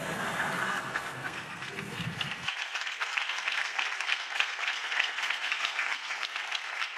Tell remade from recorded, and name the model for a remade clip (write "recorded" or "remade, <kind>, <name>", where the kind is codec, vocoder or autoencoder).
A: remade, codec, SNAC